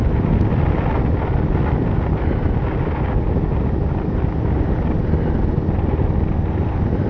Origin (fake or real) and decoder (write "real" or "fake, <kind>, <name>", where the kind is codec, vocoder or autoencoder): real